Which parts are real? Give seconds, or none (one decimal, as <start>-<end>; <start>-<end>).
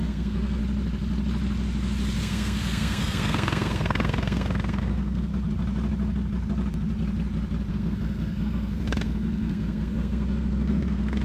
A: 0.6-2.2; 5.3-7.7